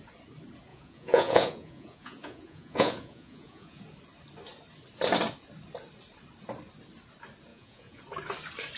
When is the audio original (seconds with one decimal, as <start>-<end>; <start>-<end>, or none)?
0.0-0.7; 3.8-7.5; 8.0-8.8